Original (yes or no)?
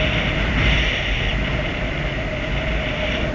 yes